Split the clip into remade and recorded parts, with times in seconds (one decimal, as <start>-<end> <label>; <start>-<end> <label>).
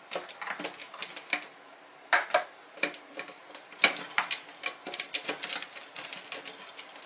0.0-7.1 recorded